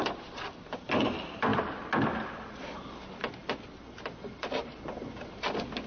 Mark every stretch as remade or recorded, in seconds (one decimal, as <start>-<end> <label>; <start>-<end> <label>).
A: 0.0-1.5 remade; 1.5-2.4 recorded; 2.4-3.4 remade; 3.4-5.2 recorded; 5.2-5.9 remade